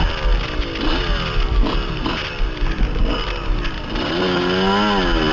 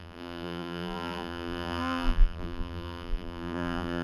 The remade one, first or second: second